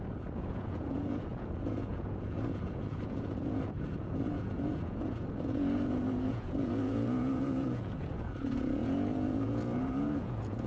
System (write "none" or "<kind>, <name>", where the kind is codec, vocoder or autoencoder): vocoder, Vocos